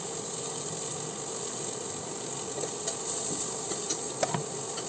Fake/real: real